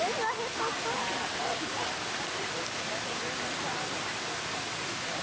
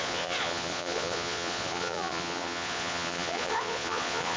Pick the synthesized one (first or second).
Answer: second